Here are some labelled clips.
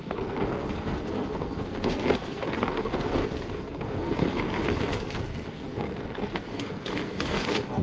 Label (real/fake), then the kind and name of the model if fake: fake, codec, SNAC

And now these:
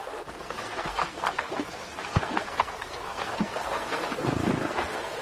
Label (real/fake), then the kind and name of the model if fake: fake, codec, SNAC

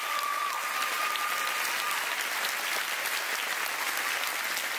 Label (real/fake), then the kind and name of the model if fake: real